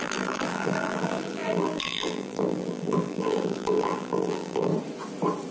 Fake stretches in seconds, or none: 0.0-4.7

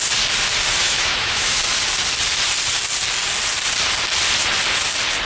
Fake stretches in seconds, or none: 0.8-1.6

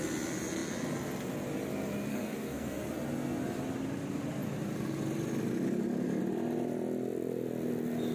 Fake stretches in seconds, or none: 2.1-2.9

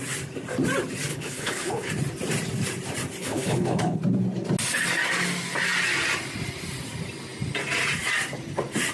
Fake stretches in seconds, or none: 1.1-1.9; 3.2-4.0